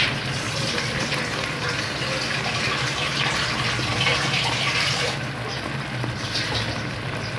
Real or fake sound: real